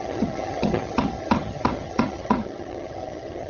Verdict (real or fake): fake